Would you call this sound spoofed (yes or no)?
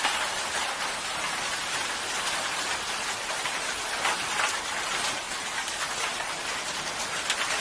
no